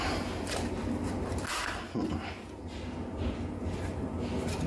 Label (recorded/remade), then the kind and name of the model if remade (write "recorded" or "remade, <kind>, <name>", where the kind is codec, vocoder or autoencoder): recorded